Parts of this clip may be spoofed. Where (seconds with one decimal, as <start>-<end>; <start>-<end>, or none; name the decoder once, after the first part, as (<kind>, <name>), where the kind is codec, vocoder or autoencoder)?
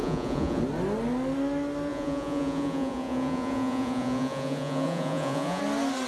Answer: 0.0-0.6 (vocoder, Vocos); 1.9-5.6